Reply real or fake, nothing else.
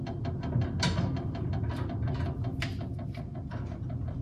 real